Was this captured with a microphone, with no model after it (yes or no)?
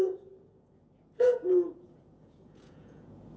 no